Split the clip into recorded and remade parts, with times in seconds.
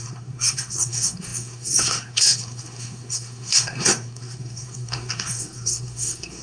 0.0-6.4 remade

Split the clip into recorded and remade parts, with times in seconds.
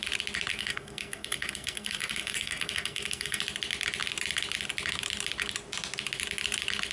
0.0-0.5 recorded; 0.5-3.4 remade; 3.4-6.9 recorded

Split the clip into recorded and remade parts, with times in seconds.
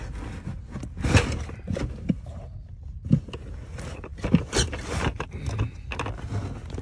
0.0-6.8 recorded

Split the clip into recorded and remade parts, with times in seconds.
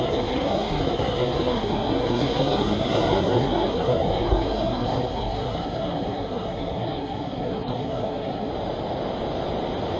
0.0-8.5 remade; 8.5-10.0 recorded